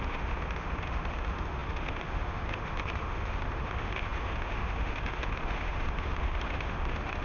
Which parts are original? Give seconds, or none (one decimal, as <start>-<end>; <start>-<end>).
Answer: none